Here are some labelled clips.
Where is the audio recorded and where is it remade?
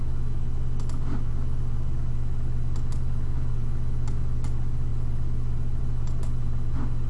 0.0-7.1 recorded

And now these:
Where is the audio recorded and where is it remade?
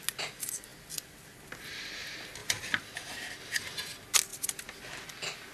0.0-0.7 recorded; 0.7-1.5 remade; 1.5-2.4 recorded; 2.4-3.1 remade; 3.1-4.3 recorded; 4.3-4.8 remade; 4.8-5.5 recorded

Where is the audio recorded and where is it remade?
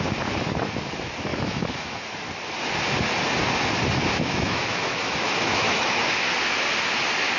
0.0-1.3 recorded; 1.3-2.3 remade; 2.3-4.0 recorded; 4.0-6.0 remade; 6.0-7.4 recorded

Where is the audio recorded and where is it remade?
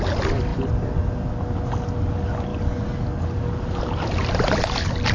0.0-5.1 recorded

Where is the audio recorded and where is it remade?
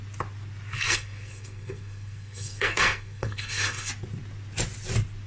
0.0-0.7 recorded; 0.7-3.9 remade; 3.9-5.3 recorded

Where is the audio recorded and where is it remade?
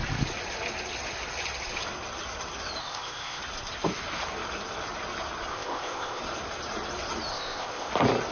0.0-2.8 recorded; 2.8-3.4 remade; 3.4-5.5 recorded; 5.5-6.2 remade; 6.2-7.3 recorded; 7.3-7.9 remade; 7.9-8.3 recorded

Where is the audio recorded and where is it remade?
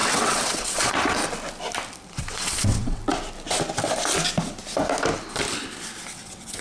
0.0-1.2 remade; 1.2-2.1 recorded; 2.1-3.0 remade; 3.0-6.1 recorded; 6.1-6.6 remade